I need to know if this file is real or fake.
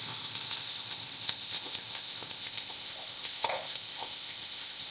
fake